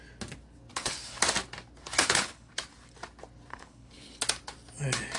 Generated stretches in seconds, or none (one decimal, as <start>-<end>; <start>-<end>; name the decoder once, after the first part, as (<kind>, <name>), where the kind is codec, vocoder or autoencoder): 0.7-1.2 (codec, HILCodec); 2.0-2.5; 3.5-4.2